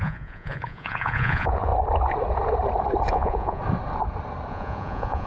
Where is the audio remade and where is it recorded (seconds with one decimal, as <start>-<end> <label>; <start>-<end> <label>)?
0.0-1.7 remade; 1.7-3.1 recorded; 3.1-3.6 remade; 3.6-4.5 recorded; 4.5-5.3 remade